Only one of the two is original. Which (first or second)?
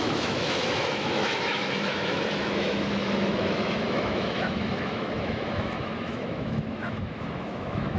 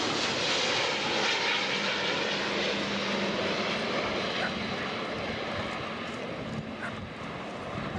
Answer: second